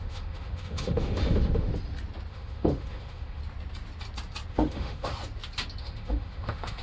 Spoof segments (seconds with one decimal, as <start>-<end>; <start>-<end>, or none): 0.0-1.7; 2.3-3.4; 4.5-5.1; 5.8-6.8